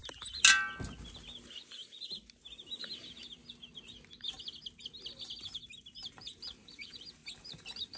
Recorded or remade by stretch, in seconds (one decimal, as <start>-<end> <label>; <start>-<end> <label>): 0.0-1.4 recorded; 1.4-1.8 remade; 1.8-2.4 recorded; 2.4-3.4 remade; 3.4-5.4 recorded; 5.4-8.0 remade

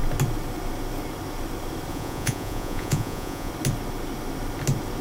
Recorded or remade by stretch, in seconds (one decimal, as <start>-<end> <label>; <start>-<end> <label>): 0.0-1.9 recorded; 1.9-3.5 remade; 3.5-5.0 recorded

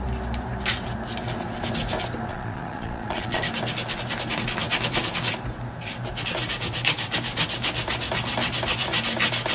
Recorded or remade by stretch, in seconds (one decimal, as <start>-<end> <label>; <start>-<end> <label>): 0.0-2.3 recorded; 2.3-3.4 remade; 3.4-9.5 recorded

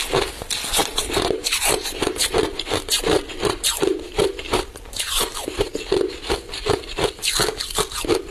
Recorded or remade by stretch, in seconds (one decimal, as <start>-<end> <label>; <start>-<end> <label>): 0.0-0.8 recorded; 0.8-5.7 remade; 5.7-8.3 recorded

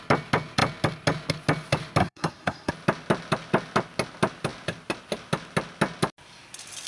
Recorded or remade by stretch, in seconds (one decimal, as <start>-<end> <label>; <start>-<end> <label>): 0.0-2.0 recorded; 2.0-2.7 remade; 2.7-6.9 recorded

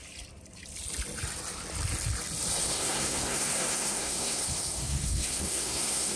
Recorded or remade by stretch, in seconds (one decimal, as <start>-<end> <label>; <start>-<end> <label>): 0.0-2.6 recorded; 2.6-6.2 remade